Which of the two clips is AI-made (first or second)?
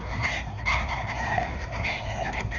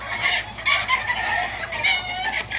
first